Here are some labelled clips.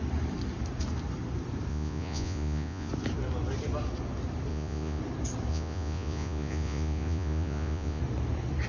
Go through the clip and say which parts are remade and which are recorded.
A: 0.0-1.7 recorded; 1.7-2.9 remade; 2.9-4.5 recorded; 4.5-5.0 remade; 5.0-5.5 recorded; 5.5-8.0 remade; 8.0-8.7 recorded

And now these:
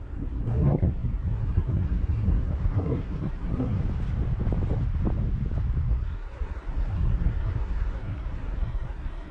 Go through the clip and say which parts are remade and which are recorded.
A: 0.0-3.8 remade; 3.8-5.9 recorded; 5.9-9.3 remade

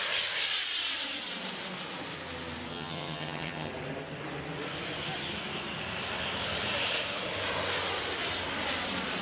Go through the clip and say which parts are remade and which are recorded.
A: 0.0-2.7 recorded; 2.7-3.7 remade; 3.7-9.2 recorded

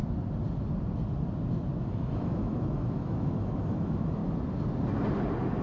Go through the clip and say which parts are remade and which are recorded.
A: 0.0-1.8 recorded; 1.8-4.2 remade; 4.2-5.6 recorded

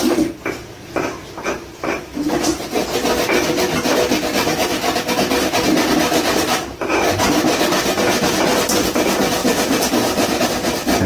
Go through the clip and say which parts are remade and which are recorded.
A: 0.0-9.4 recorded; 9.4-10.4 remade; 10.4-11.1 recorded

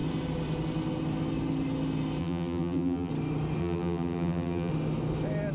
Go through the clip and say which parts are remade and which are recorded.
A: 0.0-2.2 recorded; 2.2-3.1 remade; 3.1-3.6 recorded; 3.6-4.7 remade; 4.7-5.5 recorded

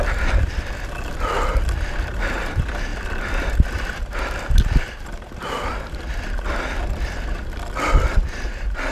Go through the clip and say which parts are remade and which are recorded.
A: 0.0-8.9 recorded